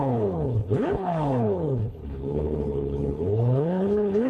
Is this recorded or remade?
remade